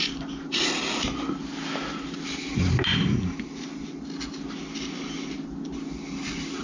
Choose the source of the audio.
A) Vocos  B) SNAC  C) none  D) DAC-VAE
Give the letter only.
C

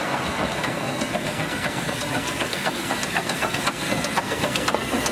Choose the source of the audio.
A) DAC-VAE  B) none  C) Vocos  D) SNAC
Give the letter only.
D